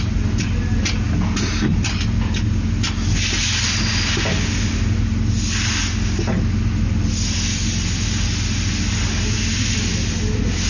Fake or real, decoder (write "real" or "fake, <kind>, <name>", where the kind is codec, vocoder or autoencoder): real